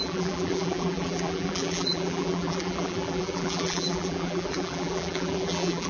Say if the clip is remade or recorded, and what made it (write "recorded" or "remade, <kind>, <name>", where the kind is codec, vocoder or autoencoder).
remade, vocoder, BigVGAN v2